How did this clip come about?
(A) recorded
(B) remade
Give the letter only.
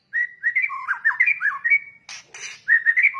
A